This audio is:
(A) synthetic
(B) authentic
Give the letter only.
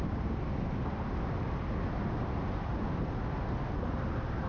B